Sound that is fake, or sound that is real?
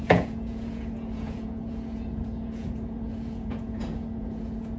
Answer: fake